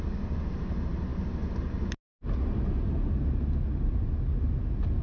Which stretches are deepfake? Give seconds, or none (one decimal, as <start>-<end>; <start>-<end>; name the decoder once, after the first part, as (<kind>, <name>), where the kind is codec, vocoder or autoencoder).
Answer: none